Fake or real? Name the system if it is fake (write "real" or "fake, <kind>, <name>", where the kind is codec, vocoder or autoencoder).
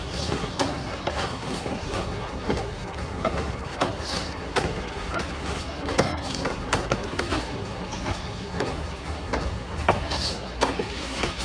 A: fake, codec, SNAC